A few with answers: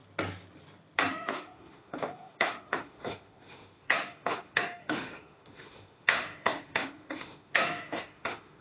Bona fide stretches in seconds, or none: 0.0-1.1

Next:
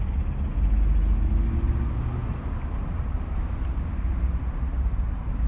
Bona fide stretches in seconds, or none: 0.0-5.5

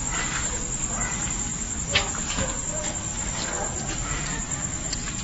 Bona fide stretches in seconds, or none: 0.0-5.2

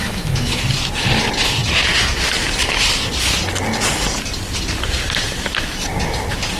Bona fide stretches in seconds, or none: 0.6-6.6

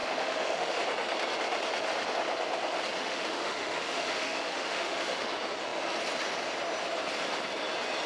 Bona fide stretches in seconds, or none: 0.7-3.0; 5.3-8.1

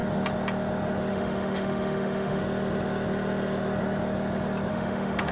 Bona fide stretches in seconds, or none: 0.0-1.1; 2.4-4.7

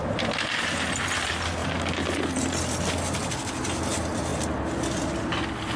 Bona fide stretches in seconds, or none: 0.0-5.8

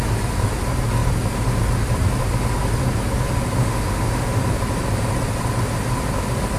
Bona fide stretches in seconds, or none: 0.0-3.6; 4.4-6.6